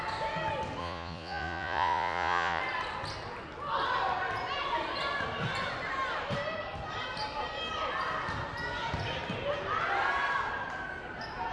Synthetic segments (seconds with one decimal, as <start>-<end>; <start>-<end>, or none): 0.8-2.6